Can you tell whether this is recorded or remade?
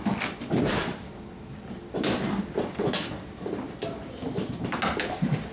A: recorded